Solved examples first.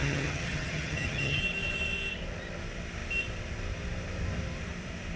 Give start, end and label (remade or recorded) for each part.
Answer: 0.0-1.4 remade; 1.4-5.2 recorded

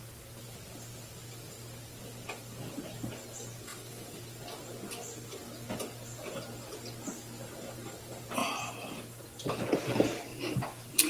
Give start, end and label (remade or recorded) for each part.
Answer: 0.0-3.7 recorded; 3.7-4.2 remade; 4.2-8.4 recorded; 8.4-9.4 remade; 9.4-10.3 recorded; 10.3-11.1 remade

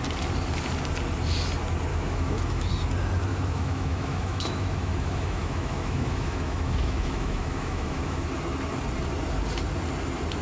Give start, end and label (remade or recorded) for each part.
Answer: 0.0-1.9 recorded; 1.9-2.7 remade; 2.7-3.3 recorded; 3.3-8.3 remade; 8.3-10.4 recorded

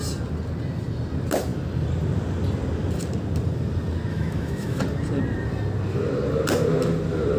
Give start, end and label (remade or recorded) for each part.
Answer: 0.0-4.1 recorded; 4.1-4.8 remade; 4.8-7.4 recorded

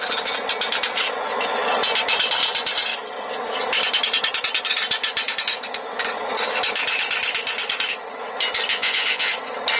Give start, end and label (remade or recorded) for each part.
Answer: 0.0-8.7 recorded; 8.7-9.3 remade; 9.3-9.8 recorded

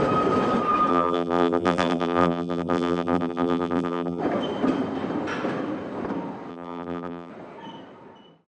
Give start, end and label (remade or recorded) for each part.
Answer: 0.0-0.9 recorded; 0.9-4.2 remade; 4.2-6.5 recorded; 6.5-7.3 remade; 7.3-8.6 recorded

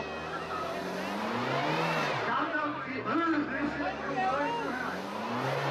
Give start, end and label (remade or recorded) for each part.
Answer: 0.0-5.7 recorded